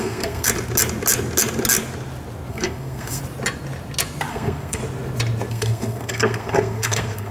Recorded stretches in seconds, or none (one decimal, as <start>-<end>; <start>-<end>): 0.5-2.5; 3.2-4.3; 4.8-5.5